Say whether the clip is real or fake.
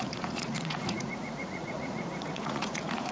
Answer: fake